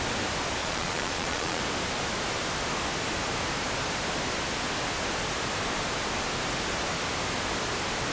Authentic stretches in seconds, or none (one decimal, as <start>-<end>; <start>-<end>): 0.0-0.6; 1.6-8.1